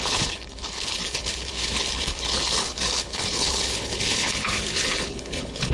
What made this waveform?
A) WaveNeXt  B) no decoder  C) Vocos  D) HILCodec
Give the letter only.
D